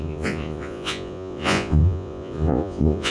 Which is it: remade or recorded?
remade